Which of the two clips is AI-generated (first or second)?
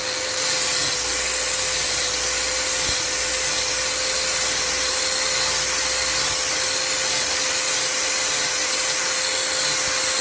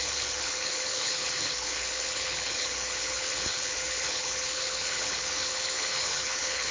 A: second